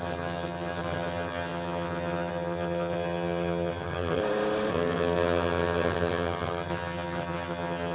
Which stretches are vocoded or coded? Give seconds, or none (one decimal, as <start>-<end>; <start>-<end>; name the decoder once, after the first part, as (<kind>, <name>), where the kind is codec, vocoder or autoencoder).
0.0-4.2 (vocoder, HiFi-GAN); 4.7-7.9